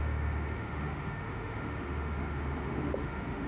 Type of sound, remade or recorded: remade